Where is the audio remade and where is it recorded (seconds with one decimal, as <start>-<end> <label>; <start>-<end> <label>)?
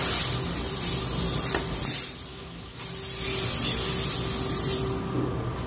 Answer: 0.0-2.3 recorded; 2.3-2.8 remade; 2.8-5.7 recorded